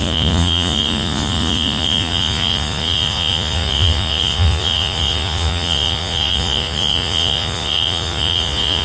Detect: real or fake fake